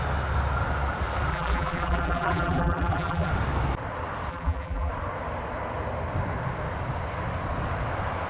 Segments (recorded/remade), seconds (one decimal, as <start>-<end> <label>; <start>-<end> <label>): 0.0-1.3 recorded; 1.3-3.3 remade; 3.3-4.3 recorded; 4.3-4.9 remade; 4.9-8.3 recorded